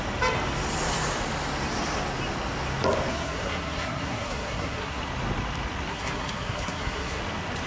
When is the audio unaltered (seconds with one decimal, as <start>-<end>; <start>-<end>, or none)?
0.0-3.1; 5.0-5.9; 7.2-7.7